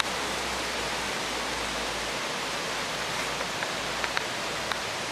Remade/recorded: recorded